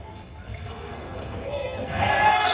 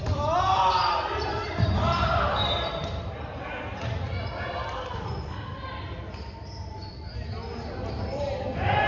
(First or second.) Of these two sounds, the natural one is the second